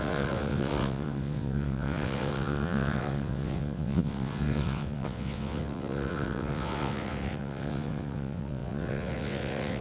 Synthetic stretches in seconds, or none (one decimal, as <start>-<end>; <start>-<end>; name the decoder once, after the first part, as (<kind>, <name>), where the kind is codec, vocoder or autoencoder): 0.0-9.8 (vocoder, WaveNeXt)

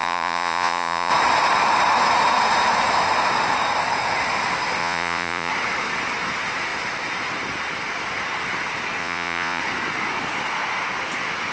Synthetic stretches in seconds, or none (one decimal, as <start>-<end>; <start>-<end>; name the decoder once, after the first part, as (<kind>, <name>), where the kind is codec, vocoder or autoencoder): 0.0-1.1 (vocoder, Vocos); 4.8-5.5; 9.0-9.6

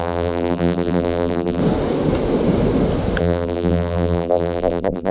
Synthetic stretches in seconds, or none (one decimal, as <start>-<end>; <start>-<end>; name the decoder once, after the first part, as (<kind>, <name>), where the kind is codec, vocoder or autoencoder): 0.0-1.6 (vocoder, BigVGAN v2); 3.2-5.1

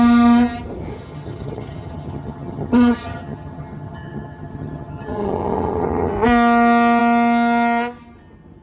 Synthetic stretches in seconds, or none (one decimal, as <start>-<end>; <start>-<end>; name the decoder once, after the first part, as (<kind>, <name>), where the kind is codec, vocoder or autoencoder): 0.9-6.1 (vocoder, HiFi-GAN)

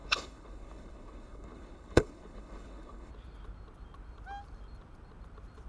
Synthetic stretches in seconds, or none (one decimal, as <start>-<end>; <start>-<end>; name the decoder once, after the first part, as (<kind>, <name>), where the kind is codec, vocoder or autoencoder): 0.0-3.1 (codec, HILCodec)